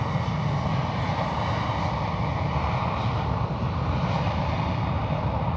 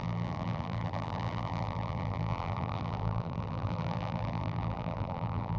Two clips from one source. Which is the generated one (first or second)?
second